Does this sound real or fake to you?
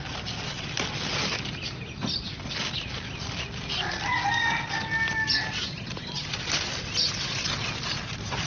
real